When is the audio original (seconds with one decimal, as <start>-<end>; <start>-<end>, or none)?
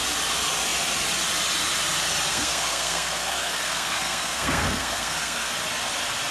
0.0-2.3; 5.5-6.3